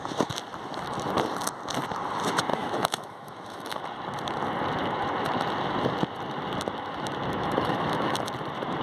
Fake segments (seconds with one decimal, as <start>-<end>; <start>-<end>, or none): 2.5-3.8; 7.4-8.2